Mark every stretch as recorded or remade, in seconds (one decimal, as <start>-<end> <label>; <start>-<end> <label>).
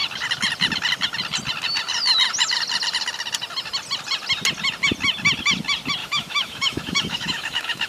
0.0-6.0 recorded; 6.0-7.9 remade